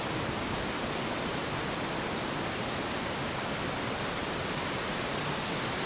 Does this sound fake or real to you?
real